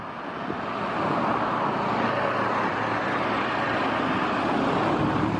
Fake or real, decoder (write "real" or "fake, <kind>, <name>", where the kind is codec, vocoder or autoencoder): real